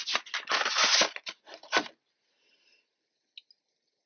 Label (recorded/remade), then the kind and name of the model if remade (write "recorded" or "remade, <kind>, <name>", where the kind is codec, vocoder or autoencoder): recorded